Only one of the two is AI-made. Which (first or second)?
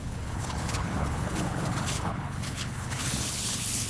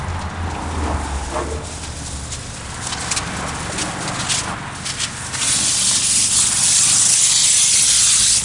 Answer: first